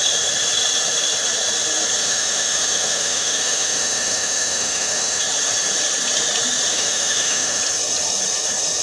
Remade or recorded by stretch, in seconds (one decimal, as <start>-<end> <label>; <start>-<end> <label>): 0.0-2.0 recorded; 2.0-5.2 remade; 5.2-6.7 recorded; 6.7-7.6 remade; 7.6-8.8 recorded

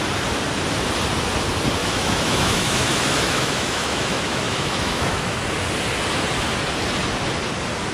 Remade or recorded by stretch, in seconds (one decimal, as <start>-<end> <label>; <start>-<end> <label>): 0.0-1.8 recorded; 1.8-5.4 remade; 5.4-7.9 recorded

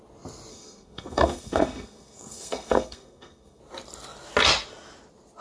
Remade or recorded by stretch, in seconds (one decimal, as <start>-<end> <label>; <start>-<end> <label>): 0.0-0.5 recorded; 0.5-3.6 remade; 3.6-5.4 recorded

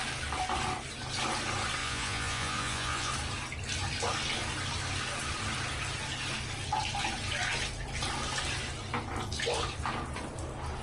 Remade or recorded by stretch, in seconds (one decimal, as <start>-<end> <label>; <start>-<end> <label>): 0.0-1.8 recorded; 1.8-3.1 remade; 3.1-10.8 recorded

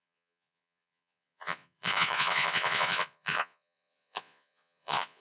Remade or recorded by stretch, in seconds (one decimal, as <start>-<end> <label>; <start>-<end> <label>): 0.0-5.2 remade

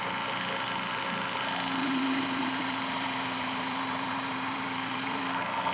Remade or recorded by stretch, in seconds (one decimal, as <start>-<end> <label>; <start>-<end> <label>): 0.0-1.8 recorded; 1.8-5.2 remade; 5.2-5.7 recorded

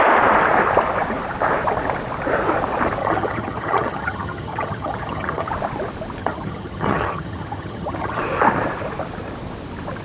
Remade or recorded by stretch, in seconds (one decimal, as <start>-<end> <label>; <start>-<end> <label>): 0.0-3.0 recorded; 3.0-5.5 remade; 5.5-6.2 recorded; 6.2-8.2 remade; 8.2-10.0 recorded

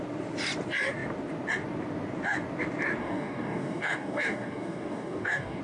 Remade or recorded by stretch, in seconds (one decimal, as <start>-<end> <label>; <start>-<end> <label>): 0.0-3.0 recorded; 3.0-5.6 remade